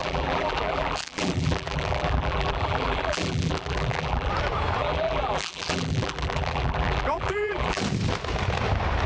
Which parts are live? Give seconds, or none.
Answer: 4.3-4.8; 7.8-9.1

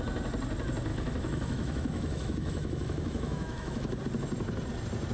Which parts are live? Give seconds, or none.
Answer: 0.0-0.9; 4.0-5.1